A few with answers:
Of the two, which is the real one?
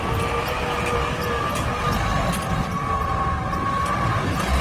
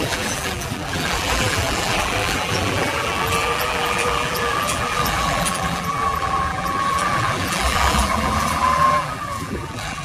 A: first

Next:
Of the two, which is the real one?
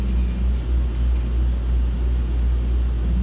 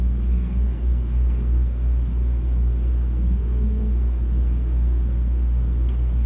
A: first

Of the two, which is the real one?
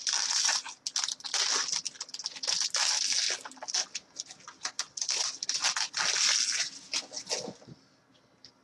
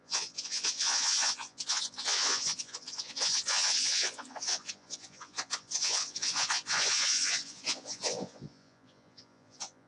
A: first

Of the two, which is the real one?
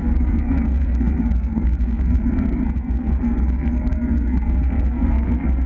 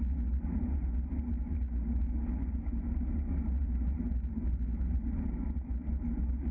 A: second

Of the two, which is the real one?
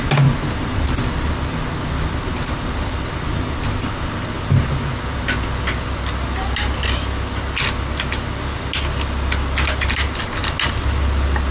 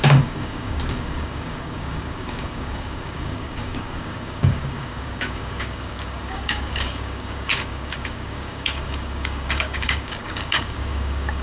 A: first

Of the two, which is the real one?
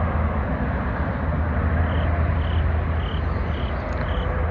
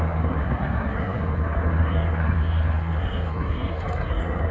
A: first